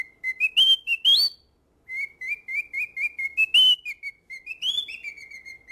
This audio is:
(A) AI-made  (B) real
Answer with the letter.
B